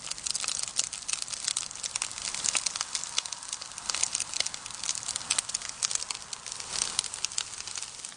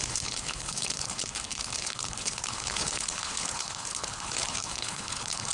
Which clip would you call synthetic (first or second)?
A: second